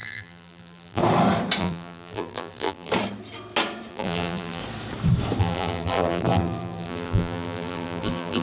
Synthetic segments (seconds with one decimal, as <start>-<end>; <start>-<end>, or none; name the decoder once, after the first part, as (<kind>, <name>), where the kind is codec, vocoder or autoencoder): 0.0-1.0 (vocoder, BigVGAN v2); 1.6-2.9; 3.9-4.6; 5.4-8.4